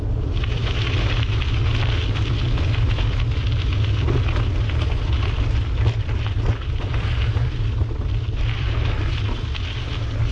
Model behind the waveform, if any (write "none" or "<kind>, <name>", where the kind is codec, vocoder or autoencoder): none